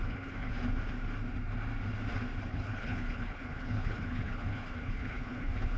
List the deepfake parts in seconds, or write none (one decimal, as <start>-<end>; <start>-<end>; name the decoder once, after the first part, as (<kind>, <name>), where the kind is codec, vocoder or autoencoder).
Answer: 0.0-0.5 (codec, HILCodec); 2.5-5.8